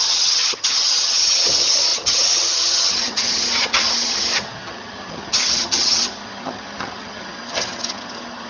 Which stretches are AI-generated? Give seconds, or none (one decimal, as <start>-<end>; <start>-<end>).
0.0-8.5